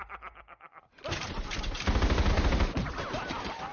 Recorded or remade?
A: recorded